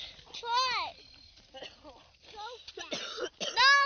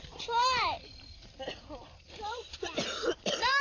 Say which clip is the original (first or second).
first